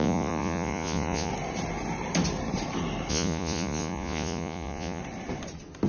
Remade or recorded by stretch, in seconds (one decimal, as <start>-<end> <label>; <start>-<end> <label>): 0.0-1.3 remade; 1.3-3.1 recorded; 3.1-5.0 remade; 5.0-5.9 recorded